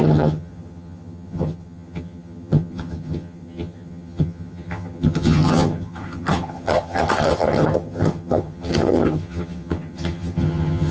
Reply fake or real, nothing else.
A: fake